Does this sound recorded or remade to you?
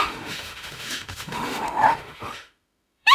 remade